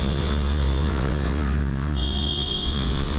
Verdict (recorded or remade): remade